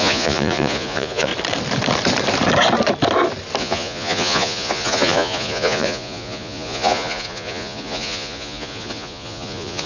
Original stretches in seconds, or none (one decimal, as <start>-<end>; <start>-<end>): 1.3-3.6